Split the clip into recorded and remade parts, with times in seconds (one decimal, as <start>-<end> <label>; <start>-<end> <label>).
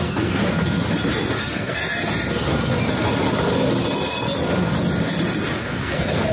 0.0-0.4 remade; 0.4-1.4 recorded; 1.4-1.8 remade; 1.8-5.6 recorded; 5.6-6.3 remade